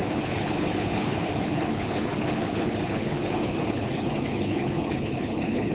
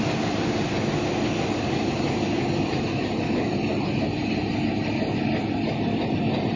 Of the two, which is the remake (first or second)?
first